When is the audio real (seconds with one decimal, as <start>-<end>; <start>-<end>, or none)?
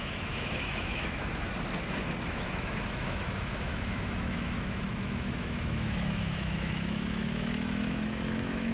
1.5-2.3